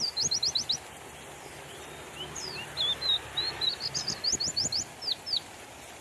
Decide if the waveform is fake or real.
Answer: real